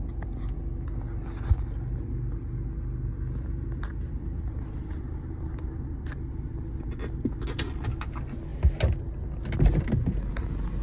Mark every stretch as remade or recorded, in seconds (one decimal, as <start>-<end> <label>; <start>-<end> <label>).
0.0-10.8 recorded